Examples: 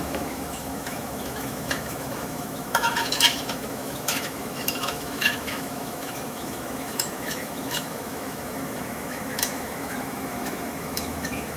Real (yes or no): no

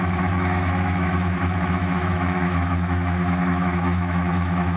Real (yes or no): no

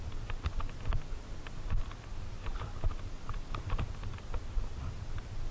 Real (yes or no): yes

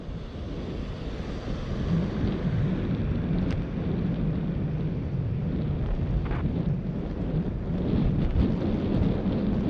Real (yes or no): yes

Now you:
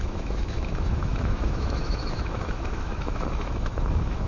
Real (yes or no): no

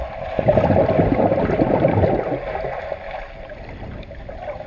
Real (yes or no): yes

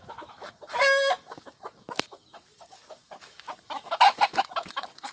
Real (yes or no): no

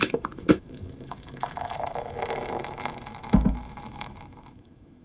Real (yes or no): no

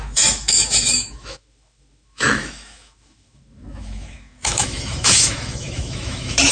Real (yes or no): no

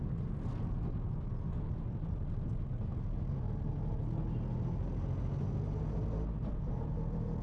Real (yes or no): yes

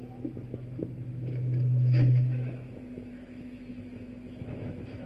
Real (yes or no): no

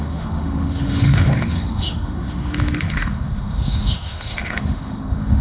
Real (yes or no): no